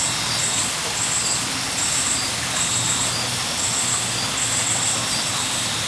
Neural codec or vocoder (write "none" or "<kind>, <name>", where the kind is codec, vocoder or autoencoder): none